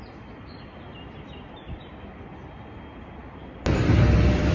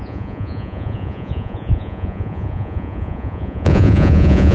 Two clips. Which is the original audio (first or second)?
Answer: first